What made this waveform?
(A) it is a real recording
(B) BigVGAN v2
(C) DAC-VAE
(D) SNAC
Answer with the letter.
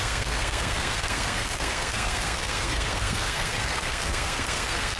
D